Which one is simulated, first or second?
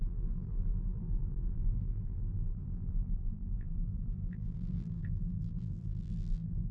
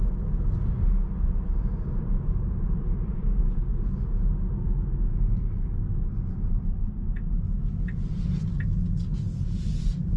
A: first